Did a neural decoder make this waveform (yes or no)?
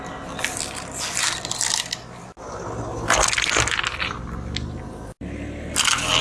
no